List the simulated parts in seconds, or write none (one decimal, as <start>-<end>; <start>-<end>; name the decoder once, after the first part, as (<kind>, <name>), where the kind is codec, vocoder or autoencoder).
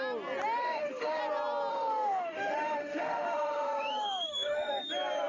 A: 0.6-1.2 (autoencoder, DAC-VAE); 1.7-4.8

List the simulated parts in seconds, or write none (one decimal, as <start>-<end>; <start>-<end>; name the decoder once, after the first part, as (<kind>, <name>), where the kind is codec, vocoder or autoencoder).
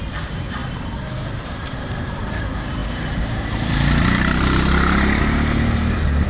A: 0.0-0.6 (vocoder, BigVGAN v2); 1.4-6.3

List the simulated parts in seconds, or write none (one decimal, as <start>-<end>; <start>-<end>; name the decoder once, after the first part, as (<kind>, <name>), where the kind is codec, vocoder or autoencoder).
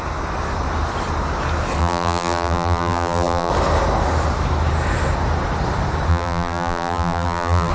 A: 1.8-3.5 (vocoder, BigVGAN v2); 6.1-7.7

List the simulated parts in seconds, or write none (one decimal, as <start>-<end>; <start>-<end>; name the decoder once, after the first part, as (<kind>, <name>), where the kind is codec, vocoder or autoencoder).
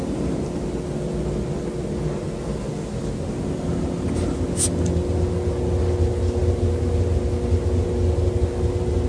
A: none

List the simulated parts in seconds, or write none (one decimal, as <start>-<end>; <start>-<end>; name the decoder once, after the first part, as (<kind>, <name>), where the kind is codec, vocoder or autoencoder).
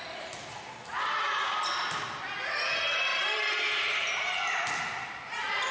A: 3.1-3.9 (vocoder, BigVGAN v2)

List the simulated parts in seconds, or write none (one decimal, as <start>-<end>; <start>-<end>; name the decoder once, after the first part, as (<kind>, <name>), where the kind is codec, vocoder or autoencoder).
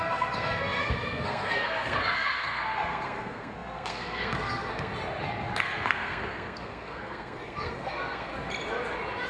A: 0.0-4.9 (codec, SNAC); 5.6-8.3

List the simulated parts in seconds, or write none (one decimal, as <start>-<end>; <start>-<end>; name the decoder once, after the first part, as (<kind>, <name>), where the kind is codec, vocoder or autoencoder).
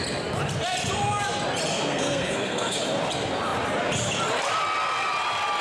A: 1.7-2.8 (codec, SNAC)